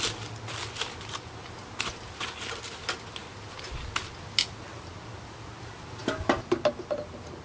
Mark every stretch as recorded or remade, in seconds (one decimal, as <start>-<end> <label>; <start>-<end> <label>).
0.0-1.4 recorded; 1.4-2.2 remade; 2.2-7.4 recorded

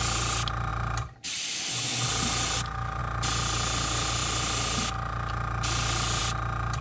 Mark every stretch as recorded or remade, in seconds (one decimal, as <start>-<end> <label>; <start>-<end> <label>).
0.0-6.8 recorded

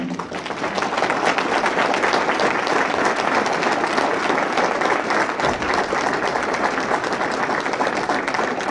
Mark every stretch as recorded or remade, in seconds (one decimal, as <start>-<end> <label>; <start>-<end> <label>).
0.0-8.7 recorded

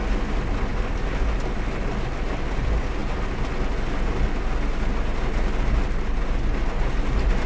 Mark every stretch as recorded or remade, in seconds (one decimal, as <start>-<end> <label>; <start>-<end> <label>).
0.0-7.5 recorded

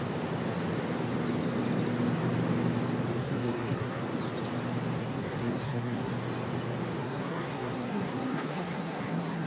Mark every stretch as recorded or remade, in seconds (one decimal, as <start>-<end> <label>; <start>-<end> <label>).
0.0-3.2 recorded; 3.2-4.0 remade; 4.0-5.0 recorded; 5.0-6.1 remade; 6.1-7.0 recorded; 7.0-9.5 remade

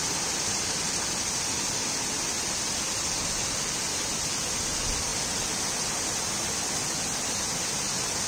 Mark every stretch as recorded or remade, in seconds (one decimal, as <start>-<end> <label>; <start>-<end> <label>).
0.0-8.3 recorded

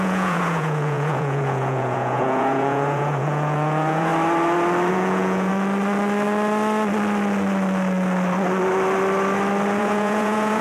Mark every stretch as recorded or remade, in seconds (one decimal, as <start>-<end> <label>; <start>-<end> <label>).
0.0-4.1 remade; 4.1-4.9 recorded; 4.9-5.5 remade; 5.5-9.8 recorded; 9.8-10.6 remade

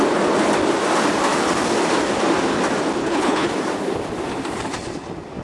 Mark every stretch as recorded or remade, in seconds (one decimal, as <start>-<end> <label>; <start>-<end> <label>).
0.0-3.0 recorded; 3.0-3.5 remade; 3.5-5.4 recorded